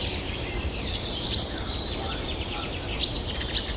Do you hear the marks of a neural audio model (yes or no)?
yes